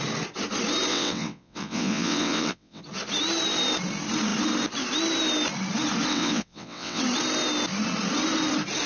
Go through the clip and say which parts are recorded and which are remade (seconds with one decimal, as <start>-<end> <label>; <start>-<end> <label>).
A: 0.0-0.9 recorded; 0.9-2.8 remade; 2.8-6.1 recorded; 6.1-7.0 remade; 7.0-8.9 recorded